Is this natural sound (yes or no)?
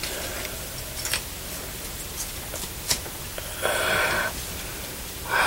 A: yes